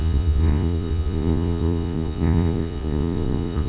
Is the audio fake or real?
fake